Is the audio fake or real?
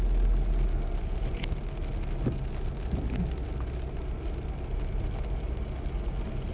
real